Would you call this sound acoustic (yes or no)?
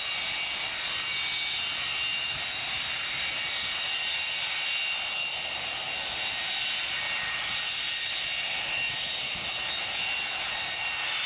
yes